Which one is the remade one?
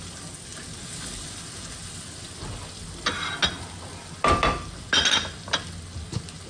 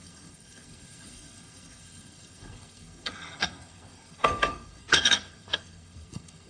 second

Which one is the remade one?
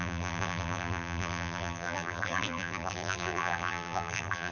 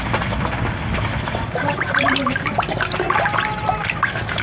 first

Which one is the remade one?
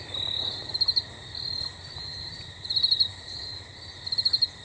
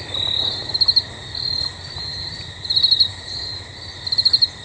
first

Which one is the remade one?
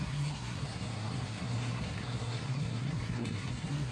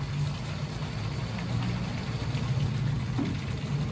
first